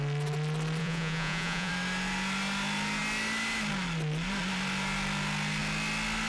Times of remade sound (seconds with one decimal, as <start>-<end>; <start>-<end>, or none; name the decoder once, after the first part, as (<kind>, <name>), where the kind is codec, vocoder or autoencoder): 0.8-1.7 (vocoder, Vocos)